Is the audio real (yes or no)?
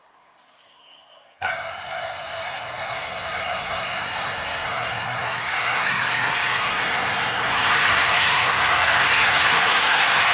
no